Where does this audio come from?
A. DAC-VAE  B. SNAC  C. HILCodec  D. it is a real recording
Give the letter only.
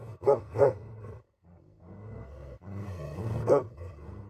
B